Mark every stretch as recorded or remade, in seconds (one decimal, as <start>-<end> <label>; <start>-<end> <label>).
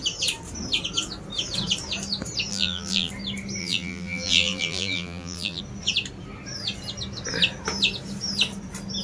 0.0-2.5 recorded; 2.5-3.1 remade; 3.1-3.6 recorded; 3.6-5.6 remade; 5.6-9.0 recorded